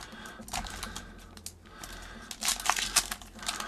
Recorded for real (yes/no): yes